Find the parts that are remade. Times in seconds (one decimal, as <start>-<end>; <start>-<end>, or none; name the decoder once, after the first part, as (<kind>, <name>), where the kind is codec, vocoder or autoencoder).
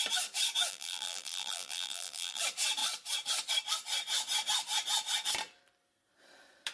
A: 0.7-2.4 (vocoder, BigVGAN v2)